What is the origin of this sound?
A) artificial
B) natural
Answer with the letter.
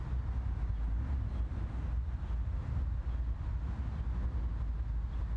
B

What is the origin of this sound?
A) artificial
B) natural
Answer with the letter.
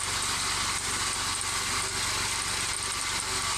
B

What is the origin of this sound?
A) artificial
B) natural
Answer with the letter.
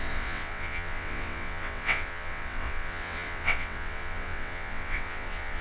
A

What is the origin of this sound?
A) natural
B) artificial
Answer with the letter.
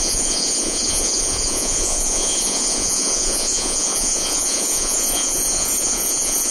B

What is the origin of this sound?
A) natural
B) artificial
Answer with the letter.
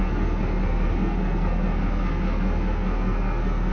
B